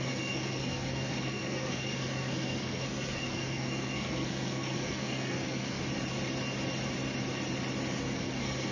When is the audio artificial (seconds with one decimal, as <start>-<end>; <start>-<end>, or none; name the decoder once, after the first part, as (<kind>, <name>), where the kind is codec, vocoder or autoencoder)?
0.0-5.8 (codec, SNAC); 8.0-8.7